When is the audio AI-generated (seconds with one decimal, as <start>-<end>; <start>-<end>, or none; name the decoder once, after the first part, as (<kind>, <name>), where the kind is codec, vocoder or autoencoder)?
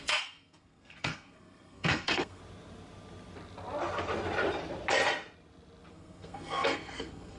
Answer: 0.0-2.4 (codec, SNAC); 5.9-7.4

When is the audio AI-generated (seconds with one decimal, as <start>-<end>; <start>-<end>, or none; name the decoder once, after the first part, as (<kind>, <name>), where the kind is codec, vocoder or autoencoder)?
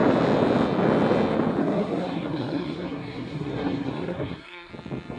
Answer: 1.6-4.7 (codec, SNAC)